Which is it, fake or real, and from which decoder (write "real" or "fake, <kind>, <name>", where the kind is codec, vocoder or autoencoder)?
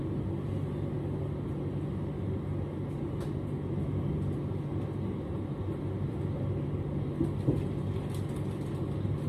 real